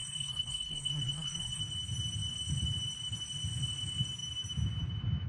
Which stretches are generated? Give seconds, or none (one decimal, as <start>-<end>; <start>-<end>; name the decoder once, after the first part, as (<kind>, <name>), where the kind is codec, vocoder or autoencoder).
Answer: 0.0-1.6 (codec, SNAC)

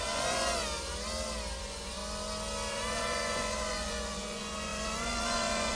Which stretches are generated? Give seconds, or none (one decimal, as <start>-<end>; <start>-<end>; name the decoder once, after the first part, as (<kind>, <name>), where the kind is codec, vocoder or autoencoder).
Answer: 0.0-0.6 (vocoder, Vocos); 1.6-2.0; 2.7-5.7